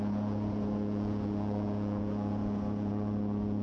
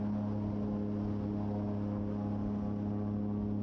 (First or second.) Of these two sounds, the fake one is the first